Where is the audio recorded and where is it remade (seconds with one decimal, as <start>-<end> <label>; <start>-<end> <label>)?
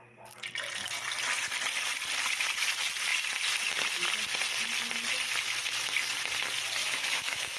0.0-6.8 recorded; 6.8-7.6 remade